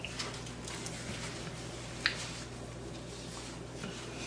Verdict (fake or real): real